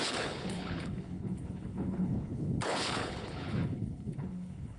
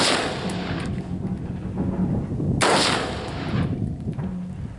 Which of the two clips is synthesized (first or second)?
first